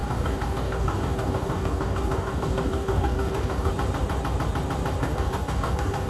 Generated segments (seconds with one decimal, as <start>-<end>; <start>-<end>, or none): 0.0-3.7; 5.0-6.1